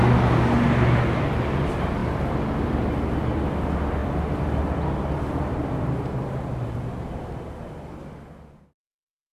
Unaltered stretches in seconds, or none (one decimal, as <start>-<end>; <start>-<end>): 0.0-2.0; 3.1-4.0; 7.4-9.3